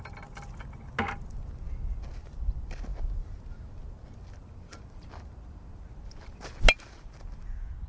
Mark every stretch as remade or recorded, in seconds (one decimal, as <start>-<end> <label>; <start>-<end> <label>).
0.0-7.9 recorded